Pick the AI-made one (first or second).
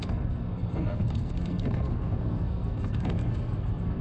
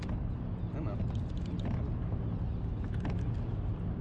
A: first